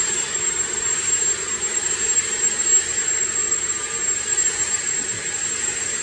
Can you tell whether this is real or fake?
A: real